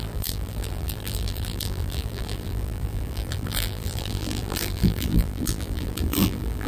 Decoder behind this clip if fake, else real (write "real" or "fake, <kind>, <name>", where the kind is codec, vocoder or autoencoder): fake, vocoder, BigVGAN v2